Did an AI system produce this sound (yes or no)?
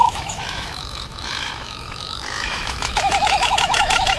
yes